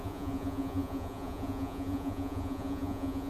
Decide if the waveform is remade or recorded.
remade